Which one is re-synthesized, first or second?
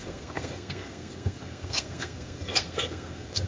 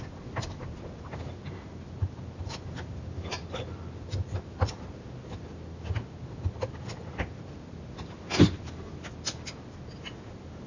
first